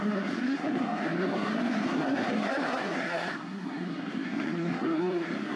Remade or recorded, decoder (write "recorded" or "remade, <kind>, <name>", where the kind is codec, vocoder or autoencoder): remade, codec, SNAC